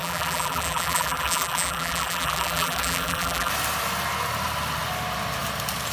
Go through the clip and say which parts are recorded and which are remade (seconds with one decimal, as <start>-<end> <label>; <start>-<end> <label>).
0.0-3.5 remade; 3.5-5.9 recorded